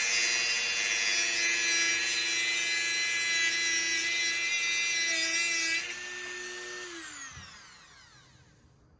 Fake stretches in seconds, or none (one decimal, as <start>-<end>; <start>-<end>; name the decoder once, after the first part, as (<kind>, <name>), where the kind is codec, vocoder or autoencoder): none